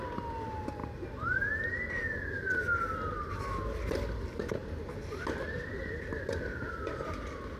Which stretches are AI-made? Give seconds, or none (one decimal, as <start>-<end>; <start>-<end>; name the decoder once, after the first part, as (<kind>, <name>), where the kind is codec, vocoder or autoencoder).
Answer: none